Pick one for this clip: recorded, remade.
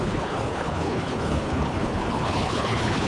remade